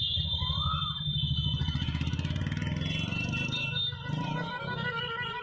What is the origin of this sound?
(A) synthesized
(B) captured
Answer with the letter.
B